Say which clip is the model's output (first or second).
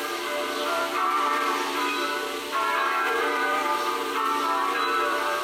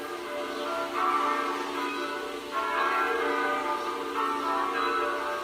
first